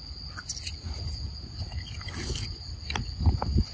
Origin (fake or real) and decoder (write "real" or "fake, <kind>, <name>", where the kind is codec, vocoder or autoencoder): real